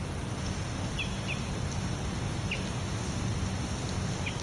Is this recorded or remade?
recorded